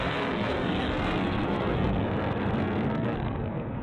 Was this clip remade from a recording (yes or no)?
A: yes